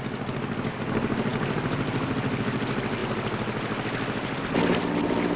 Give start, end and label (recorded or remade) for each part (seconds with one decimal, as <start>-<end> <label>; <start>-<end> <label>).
0.0-5.4 recorded